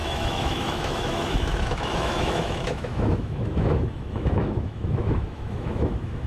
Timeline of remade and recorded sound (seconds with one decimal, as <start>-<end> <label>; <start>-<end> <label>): 0.0-6.3 remade